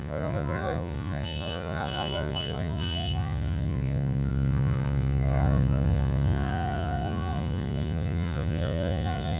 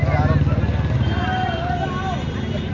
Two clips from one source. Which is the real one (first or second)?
second